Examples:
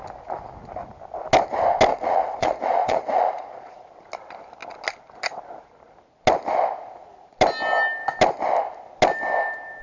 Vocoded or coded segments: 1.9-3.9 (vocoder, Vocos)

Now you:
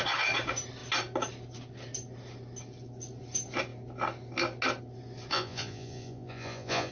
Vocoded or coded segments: 5.3-6.9 (vocoder, Vocos)

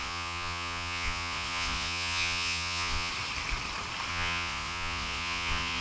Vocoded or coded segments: 0.0-3.1 (vocoder, Vocos); 4.1-5.8

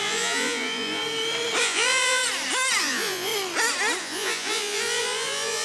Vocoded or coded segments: 0.0-1.0 (vocoder, Vocos); 1.6-2.2; 2.8-3.3; 4.0-5.6

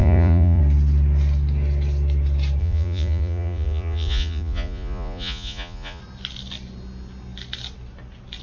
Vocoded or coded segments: 0.0-0.6 (vocoder, Vocos); 2.6-6.0

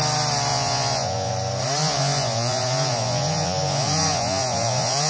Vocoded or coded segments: 0.5-1.3 (vocoder, Vocos); 1.8-5.1

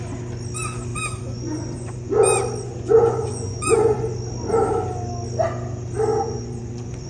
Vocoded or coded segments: 0.9-2.1 (vocoder, Vocos); 2.6-4.0; 6.1-7.1